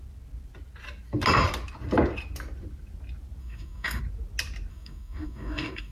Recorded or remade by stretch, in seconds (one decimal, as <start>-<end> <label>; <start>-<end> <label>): 0.0-3.4 recorded; 3.4-4.0 remade; 4.0-4.7 recorded; 4.7-5.9 remade